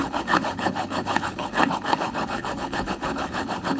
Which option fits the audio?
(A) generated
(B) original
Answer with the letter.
A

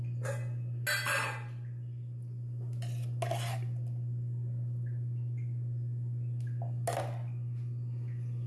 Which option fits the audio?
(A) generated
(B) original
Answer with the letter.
B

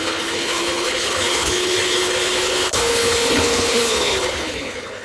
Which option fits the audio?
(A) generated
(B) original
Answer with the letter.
A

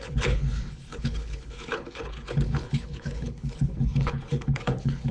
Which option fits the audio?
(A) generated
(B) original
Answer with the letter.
A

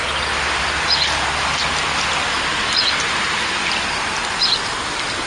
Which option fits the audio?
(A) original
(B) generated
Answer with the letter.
A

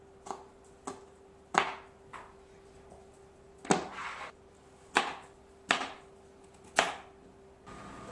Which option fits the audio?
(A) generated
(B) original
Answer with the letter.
B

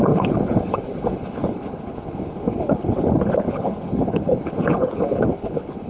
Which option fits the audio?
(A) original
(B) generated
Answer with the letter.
B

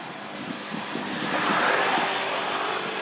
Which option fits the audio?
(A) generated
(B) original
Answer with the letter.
B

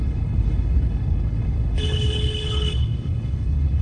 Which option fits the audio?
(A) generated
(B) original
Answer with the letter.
A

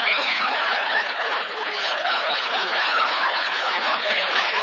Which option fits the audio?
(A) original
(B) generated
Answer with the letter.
B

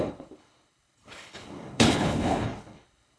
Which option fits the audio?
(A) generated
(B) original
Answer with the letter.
A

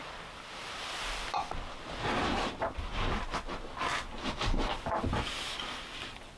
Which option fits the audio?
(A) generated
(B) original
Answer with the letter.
B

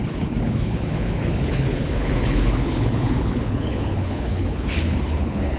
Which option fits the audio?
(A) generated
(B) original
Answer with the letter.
A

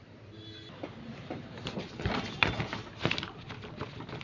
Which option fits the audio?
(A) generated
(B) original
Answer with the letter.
B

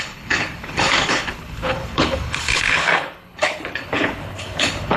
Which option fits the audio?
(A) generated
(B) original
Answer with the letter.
A